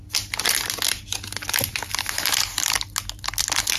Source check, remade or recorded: recorded